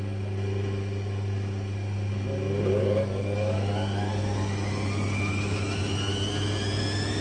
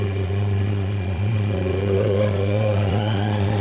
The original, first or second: first